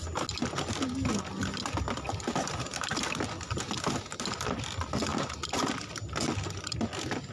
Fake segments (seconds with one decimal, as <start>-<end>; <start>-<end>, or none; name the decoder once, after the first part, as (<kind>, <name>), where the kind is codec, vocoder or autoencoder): none